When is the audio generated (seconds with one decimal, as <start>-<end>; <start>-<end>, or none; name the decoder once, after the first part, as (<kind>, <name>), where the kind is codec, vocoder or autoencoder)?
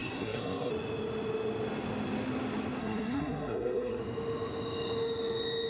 0.0-0.7 (codec, SNAC); 2.8-4.0